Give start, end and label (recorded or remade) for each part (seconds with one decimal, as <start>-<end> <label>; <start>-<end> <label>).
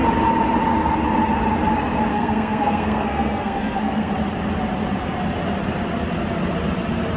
0.0-2.1 recorded; 2.1-4.1 remade; 4.1-7.2 recorded